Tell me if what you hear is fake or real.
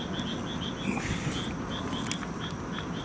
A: real